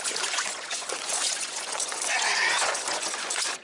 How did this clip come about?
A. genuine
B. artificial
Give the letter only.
B